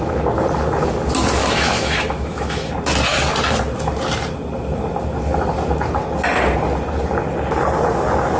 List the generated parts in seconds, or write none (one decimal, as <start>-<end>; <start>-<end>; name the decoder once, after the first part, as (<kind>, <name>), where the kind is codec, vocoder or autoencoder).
1.4-2.7 (autoencoder, DAC-VAE)